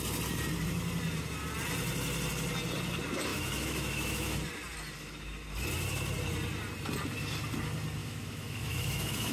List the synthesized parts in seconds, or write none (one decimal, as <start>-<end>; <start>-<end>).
3.3-4.4; 8.0-9.3